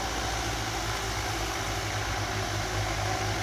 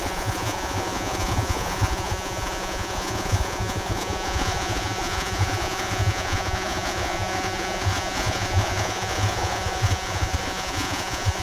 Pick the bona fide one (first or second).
first